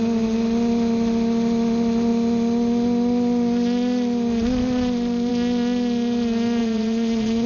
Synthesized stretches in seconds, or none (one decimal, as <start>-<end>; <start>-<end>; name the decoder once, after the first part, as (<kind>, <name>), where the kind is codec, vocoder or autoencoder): 6.6-7.5 (vocoder, Vocos)